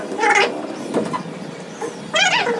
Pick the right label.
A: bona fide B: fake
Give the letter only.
A